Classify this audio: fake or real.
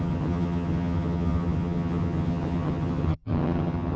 fake